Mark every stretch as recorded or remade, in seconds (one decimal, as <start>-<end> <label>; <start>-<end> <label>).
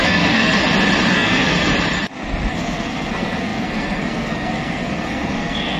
0.0-0.6 remade; 0.6-1.1 recorded; 1.1-1.7 remade; 1.7-2.5 recorded; 2.5-5.8 remade